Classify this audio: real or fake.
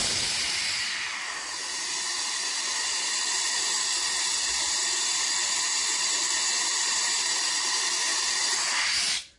real